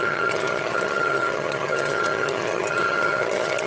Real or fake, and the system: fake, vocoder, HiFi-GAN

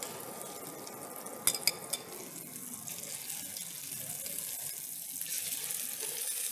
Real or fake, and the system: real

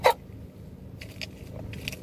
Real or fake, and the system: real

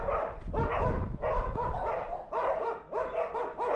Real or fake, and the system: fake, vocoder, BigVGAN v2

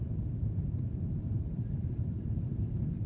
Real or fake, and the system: fake, vocoder, BigVGAN v2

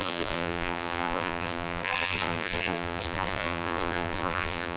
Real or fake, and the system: fake, vocoder, BigVGAN v2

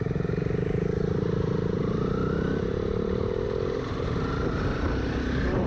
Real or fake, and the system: fake, vocoder, BigVGAN v2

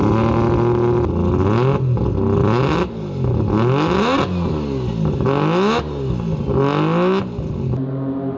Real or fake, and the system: real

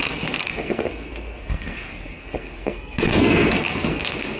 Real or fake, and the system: fake, codec, SNAC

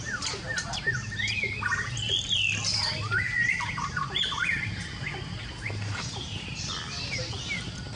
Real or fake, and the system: fake, vocoder, BigVGAN v2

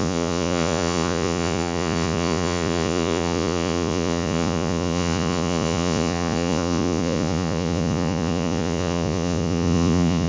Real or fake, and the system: fake, vocoder, Vocos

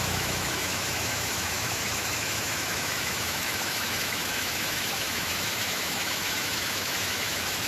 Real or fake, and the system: fake, autoencoder, DAC-VAE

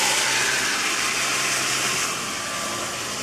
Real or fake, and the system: real